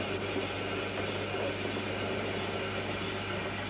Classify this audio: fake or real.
real